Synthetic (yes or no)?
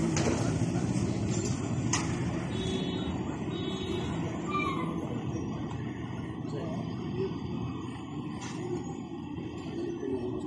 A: no